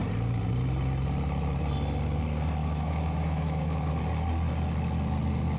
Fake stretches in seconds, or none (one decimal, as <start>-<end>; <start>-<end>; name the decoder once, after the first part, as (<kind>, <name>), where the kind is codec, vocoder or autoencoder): 2.6-3.9 (autoencoder, DAC-VAE)